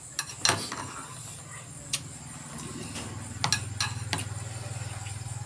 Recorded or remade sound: recorded